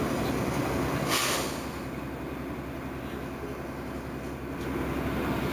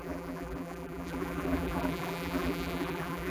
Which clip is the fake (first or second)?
second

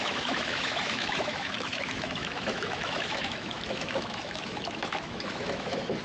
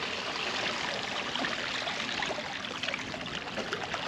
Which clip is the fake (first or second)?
first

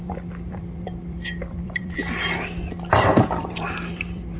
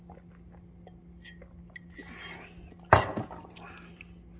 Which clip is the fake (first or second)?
first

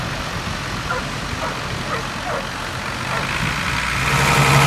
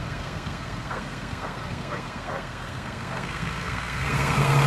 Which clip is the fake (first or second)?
second